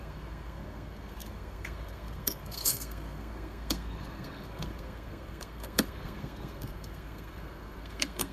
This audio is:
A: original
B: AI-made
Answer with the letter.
B